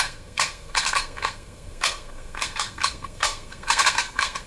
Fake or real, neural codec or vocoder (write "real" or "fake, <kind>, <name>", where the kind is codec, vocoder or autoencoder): fake, codec, SNAC